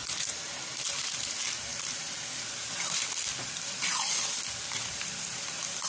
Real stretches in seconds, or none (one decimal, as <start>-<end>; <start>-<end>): 0.0-0.9